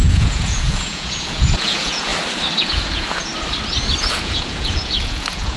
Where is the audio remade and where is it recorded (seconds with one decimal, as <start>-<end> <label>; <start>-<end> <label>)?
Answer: 0.0-2.1 remade; 2.1-2.6 recorded; 2.6-3.3 remade; 3.3-4.0 recorded; 4.0-5.6 remade

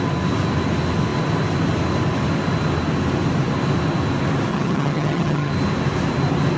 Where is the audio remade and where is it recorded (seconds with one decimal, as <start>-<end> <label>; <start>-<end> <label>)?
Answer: 0.0-4.5 recorded; 4.5-5.5 remade; 5.5-6.6 recorded